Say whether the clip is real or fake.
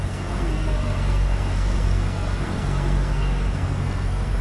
fake